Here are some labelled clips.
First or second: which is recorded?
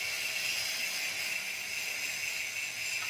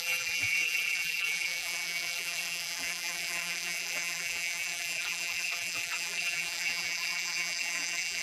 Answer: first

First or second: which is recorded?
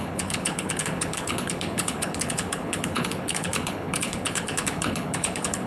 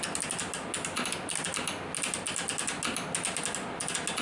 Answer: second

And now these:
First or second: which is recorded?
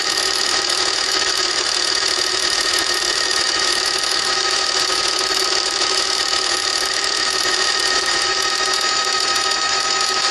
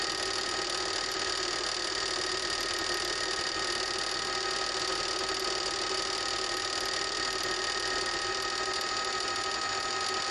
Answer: second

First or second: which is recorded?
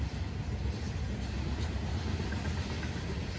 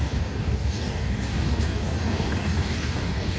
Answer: first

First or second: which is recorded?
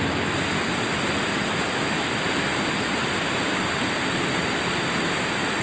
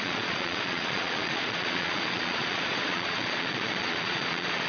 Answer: first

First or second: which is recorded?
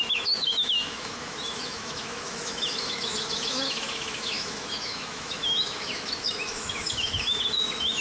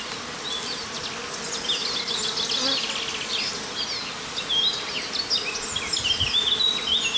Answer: second